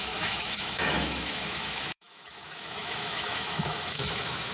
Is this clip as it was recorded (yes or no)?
no